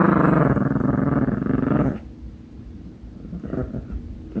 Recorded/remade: recorded